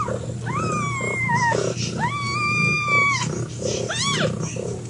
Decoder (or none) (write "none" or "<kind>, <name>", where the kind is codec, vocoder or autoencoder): none